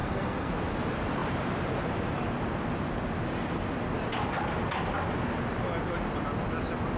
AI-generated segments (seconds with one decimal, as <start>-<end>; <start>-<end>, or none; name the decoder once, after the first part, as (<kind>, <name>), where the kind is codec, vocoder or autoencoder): 0.0-0.5 (codec, SNAC)

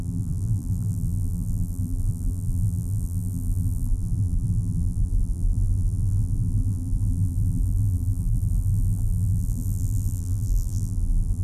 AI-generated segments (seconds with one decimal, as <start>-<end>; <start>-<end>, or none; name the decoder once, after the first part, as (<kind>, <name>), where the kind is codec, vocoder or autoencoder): 0.0-11.4 (vocoder, BigVGAN v2)

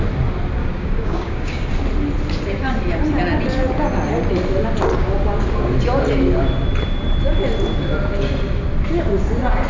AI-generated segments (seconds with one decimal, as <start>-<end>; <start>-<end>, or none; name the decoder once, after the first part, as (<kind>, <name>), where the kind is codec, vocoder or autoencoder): 0.6-1.7 (codec, DAC)

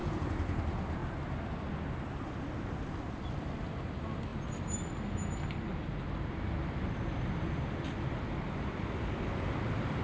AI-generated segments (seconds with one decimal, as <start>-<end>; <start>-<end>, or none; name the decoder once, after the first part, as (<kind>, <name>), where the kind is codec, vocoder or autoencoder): 0.0-0.6 (vocoder, Vocos)

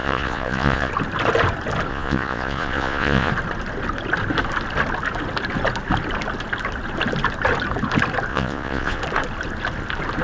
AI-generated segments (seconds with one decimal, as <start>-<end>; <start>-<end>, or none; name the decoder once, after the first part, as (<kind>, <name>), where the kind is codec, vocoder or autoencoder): 0.0-0.9 (vocoder, Vocos); 1.9-3.3; 8.3-9.0